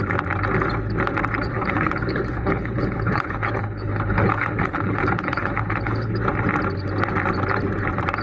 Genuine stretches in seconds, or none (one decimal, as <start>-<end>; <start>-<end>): 0.0-1.5; 6.1-8.2